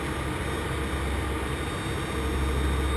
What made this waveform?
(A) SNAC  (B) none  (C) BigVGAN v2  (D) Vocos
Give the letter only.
B